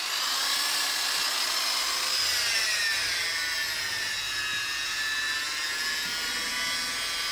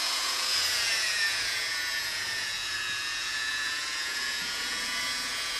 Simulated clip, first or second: second